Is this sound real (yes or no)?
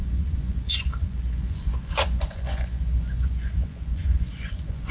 no